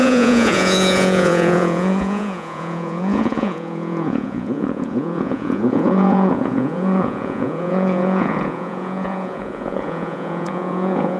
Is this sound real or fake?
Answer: fake